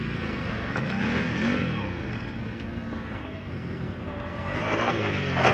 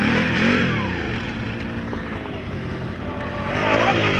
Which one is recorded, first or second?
second